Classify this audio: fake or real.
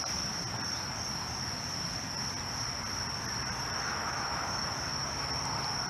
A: real